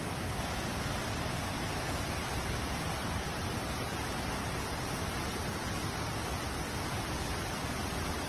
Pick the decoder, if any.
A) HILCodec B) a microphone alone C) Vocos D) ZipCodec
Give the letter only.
B